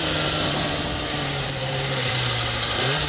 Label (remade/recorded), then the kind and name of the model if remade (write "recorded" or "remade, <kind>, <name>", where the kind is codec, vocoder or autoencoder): remade, vocoder, BigVGAN v2